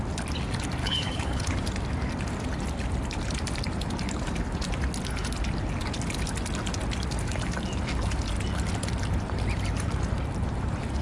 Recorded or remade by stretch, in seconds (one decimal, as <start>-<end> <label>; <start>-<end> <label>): 0.0-0.8 recorded; 0.8-1.5 remade; 1.5-11.0 recorded

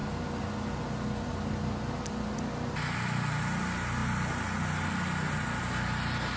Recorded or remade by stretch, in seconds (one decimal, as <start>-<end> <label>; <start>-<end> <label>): 0.0-6.4 recorded

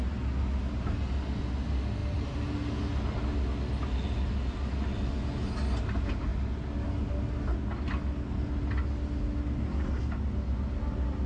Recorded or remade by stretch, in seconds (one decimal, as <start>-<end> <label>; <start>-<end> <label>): 0.0-11.3 recorded

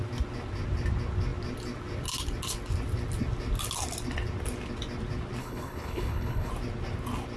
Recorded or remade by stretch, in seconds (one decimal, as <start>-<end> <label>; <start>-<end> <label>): 0.0-5.4 recorded; 5.4-6.5 remade; 6.5-7.4 recorded

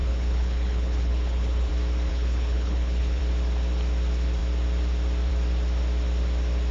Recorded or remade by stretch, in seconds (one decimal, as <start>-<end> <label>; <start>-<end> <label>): 0.0-1.7 remade; 1.7-2.1 recorded; 2.1-3.2 remade; 3.2-6.7 recorded

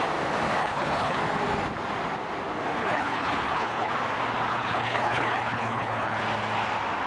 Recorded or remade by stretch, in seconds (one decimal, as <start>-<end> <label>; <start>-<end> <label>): 0.0-0.6 recorded; 0.6-1.2 remade; 1.2-2.8 recorded; 2.8-3.9 remade; 3.9-4.5 recorded; 4.5-6.2 remade; 6.2-7.1 recorded

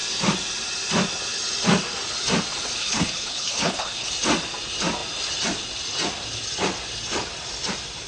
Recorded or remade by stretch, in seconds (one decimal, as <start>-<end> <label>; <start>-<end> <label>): 0.0-2.8 recorded; 2.8-4.1 remade; 4.1-8.1 recorded